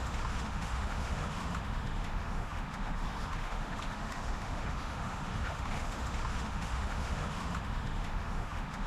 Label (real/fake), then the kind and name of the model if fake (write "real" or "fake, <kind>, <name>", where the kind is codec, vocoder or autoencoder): fake, autoencoder, DAC-VAE